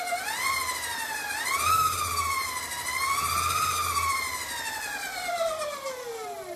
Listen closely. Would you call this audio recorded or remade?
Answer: recorded